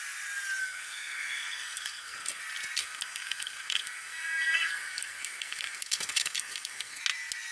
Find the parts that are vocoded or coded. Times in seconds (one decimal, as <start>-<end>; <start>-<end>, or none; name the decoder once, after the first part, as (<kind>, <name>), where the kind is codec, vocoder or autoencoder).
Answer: 0.6-2.4 (codec, SNAC); 2.8-7.0